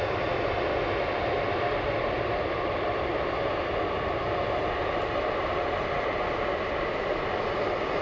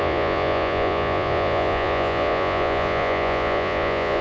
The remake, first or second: second